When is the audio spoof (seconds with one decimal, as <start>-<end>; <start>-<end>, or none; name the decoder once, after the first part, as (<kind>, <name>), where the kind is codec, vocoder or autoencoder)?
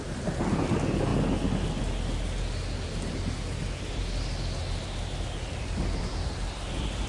none